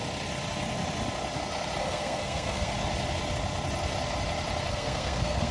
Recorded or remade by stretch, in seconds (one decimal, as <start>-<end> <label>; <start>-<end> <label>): 0.0-1.8 recorded; 1.8-2.7 remade; 2.7-4.7 recorded; 4.7-5.5 remade